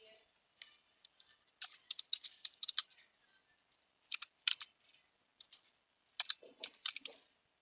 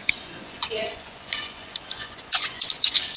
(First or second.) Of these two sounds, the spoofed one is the second